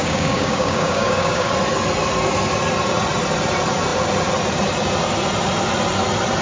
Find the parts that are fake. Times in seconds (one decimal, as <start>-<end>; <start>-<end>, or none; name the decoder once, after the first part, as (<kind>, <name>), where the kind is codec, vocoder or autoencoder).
0.0-1.5 (codec, DAC)

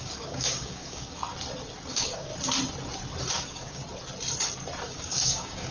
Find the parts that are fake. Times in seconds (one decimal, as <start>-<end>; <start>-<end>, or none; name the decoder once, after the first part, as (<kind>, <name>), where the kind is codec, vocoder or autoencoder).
0.0-1.2 (codec, DAC); 1.9-2.3; 3.3-3.8; 4.9-5.7